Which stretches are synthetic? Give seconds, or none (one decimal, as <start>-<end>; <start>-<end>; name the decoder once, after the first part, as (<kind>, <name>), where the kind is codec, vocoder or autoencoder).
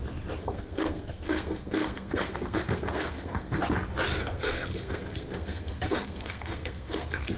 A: 0.4-3.6 (codec, SNAC); 4.2-7.4